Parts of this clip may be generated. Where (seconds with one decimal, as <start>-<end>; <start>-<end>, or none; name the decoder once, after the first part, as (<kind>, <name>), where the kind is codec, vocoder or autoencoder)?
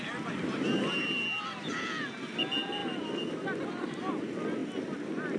none